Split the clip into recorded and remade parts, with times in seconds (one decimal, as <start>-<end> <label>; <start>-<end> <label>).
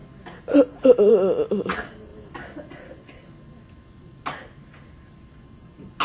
0.0-6.0 recorded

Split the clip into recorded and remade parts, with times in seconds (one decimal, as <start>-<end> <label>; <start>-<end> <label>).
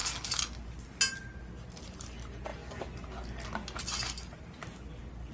0.0-5.3 recorded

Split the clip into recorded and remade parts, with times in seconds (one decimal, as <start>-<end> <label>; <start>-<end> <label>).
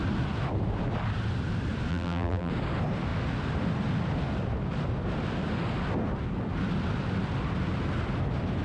0.0-1.9 recorded; 1.9-2.5 remade; 2.5-8.6 recorded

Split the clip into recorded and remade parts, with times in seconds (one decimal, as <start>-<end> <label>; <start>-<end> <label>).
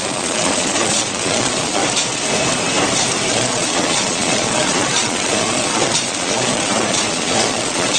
0.0-1.8 remade; 1.8-3.3 recorded; 3.3-8.0 remade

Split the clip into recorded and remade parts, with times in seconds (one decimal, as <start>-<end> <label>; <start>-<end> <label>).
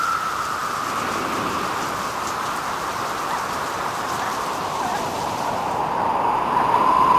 0.0-7.2 remade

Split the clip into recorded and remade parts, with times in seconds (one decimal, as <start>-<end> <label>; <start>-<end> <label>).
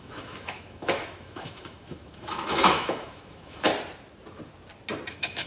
0.0-3.7 remade; 3.7-5.1 recorded; 5.1-5.5 remade